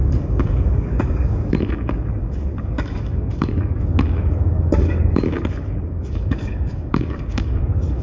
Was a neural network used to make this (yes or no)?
yes